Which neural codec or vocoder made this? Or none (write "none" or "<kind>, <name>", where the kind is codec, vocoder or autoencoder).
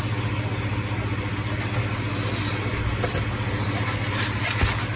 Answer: none